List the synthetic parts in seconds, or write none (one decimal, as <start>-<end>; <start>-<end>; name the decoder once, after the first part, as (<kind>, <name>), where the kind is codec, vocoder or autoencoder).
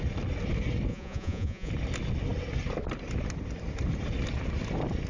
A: 0.9-1.7 (vocoder, Vocos)